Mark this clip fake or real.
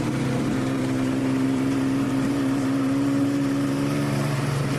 fake